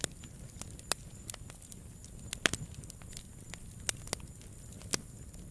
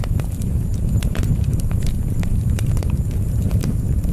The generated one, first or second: second